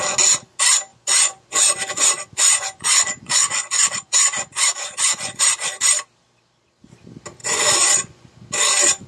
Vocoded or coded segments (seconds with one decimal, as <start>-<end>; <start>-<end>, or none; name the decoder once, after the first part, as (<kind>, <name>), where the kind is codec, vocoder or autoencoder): 0.9-5.4 (vocoder, Vocos); 7.4-8.3